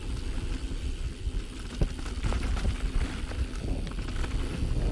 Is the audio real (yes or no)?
yes